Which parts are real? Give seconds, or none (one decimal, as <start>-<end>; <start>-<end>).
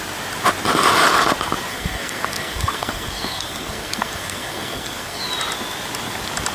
0.0-1.7; 5.2-6.5